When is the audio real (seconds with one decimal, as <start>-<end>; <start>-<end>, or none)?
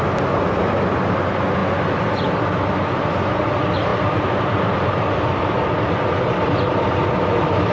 0.0-3.9; 7.0-7.7